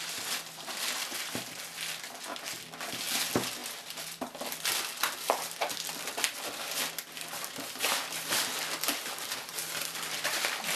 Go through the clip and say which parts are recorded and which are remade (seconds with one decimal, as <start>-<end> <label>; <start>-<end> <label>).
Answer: 0.0-10.8 recorded